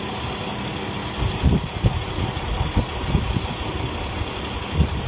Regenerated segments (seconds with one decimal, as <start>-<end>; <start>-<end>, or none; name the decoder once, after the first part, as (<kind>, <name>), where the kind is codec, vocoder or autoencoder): 1.0-4.1 (vocoder, BigVGAN v2)